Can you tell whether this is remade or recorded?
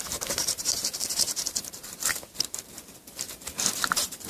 remade